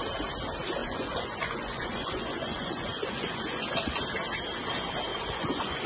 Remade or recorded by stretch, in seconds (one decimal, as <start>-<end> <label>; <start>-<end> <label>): 0.0-0.8 recorded; 0.8-4.0 remade; 4.0-5.1 recorded; 5.1-5.9 remade